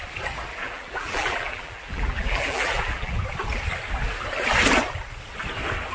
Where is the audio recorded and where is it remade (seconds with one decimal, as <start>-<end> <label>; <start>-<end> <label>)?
0.0-0.5 recorded; 0.5-3.2 remade; 3.2-5.9 recorded